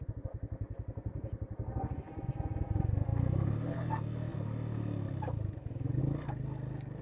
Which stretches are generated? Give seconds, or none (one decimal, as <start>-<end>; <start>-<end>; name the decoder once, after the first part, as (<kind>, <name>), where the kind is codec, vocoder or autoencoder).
none